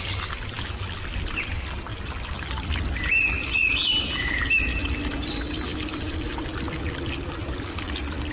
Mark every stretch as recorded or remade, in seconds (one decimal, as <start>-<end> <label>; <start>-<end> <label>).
0.0-8.3 recorded